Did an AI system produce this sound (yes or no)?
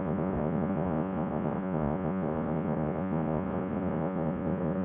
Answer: yes